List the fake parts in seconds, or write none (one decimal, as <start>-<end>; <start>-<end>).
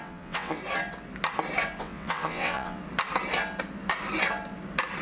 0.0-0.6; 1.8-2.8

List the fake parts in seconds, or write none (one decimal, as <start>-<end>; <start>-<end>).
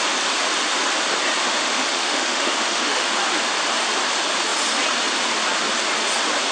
1.4-3.1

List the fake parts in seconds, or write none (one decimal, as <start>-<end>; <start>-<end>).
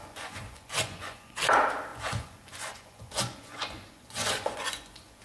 0.0-1.4; 1.9-5.2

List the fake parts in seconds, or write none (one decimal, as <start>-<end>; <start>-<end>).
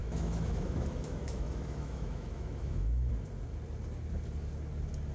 0.0-3.1